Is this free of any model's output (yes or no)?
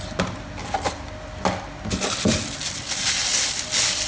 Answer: yes